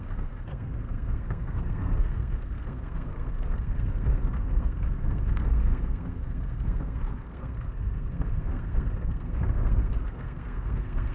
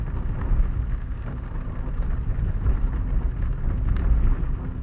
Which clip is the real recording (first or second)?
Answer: second